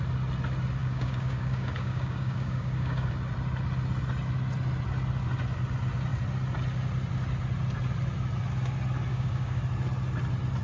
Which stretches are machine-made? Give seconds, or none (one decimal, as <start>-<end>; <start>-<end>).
0.8-3.1; 9.1-9.6